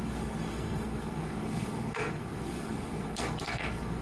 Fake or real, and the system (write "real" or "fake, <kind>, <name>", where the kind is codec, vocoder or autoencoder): fake, codec, SNAC